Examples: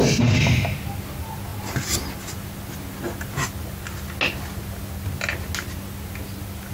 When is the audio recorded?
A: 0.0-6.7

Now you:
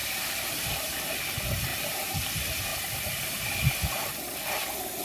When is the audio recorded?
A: 1.2-1.7; 2.3-5.0

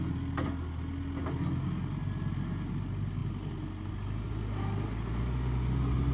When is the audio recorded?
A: 0.0-6.1

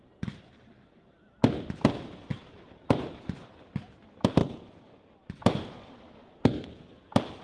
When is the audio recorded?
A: 1.2-2.3; 2.9-7.4